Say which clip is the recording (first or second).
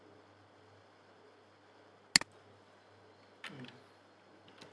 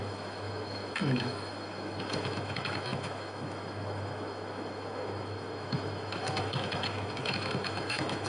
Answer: first